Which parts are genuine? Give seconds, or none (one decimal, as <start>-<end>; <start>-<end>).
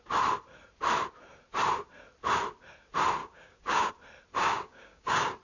0.0-3.2; 3.9-4.4